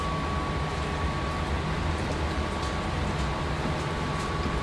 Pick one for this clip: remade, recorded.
recorded